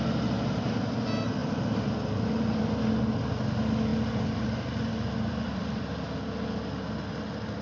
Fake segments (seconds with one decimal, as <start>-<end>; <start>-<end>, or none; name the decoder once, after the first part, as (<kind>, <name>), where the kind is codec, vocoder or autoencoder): 1.4-2.6 (vocoder, BigVGAN v2); 3.9-5.8